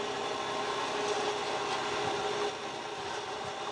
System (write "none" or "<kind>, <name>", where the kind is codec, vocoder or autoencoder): none